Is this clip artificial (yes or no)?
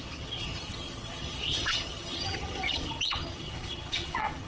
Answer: yes